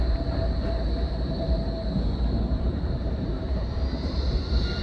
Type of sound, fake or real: fake